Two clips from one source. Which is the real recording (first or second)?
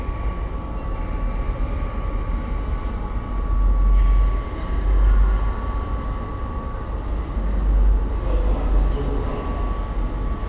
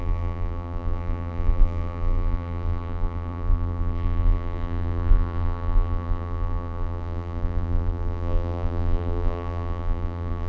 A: first